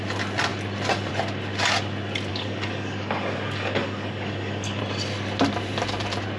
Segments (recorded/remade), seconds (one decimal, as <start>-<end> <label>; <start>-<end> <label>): 0.0-2.3 recorded; 2.3-4.8 remade; 4.8-6.4 recorded